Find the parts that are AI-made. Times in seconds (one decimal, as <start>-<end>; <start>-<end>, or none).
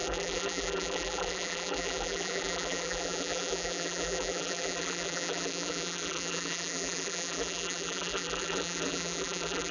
0.0-9.7